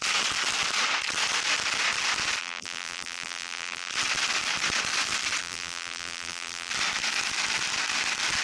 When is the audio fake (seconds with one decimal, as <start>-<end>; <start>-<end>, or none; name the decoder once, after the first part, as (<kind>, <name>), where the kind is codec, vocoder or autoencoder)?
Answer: 2.4-3.9 (vocoder, BigVGAN v2); 5.4-6.7